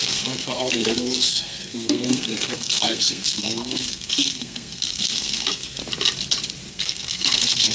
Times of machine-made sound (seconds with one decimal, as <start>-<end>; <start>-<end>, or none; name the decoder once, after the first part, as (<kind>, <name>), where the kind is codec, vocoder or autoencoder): 0.0-5.8 (codec, SNAC); 6.7-7.7